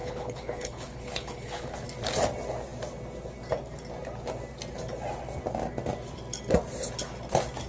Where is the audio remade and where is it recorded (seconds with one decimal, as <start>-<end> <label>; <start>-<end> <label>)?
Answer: 0.0-1.7 remade; 1.7-7.7 recorded